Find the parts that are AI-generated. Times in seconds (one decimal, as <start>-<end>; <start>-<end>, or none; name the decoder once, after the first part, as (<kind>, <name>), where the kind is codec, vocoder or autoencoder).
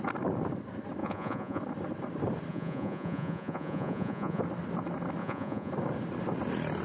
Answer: 1.0-1.6 (vocoder, Vocos); 2.5-4.4; 5.2-5.7